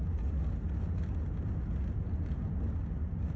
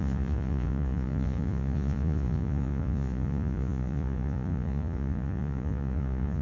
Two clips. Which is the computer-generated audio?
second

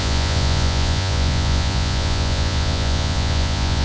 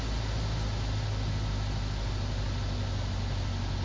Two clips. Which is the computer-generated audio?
first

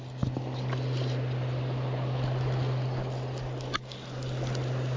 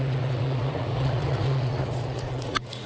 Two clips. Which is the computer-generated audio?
second